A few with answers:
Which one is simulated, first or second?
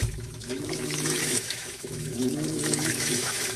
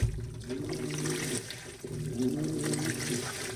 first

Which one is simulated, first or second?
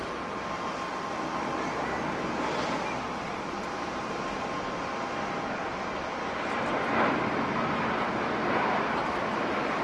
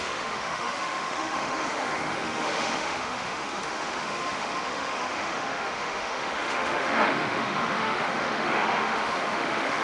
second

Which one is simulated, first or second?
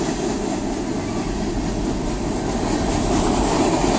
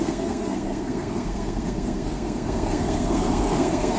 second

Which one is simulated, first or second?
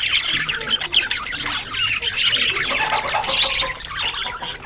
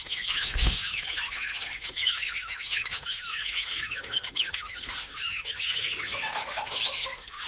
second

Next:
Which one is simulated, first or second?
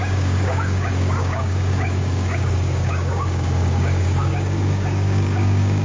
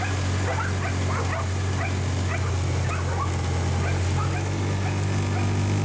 first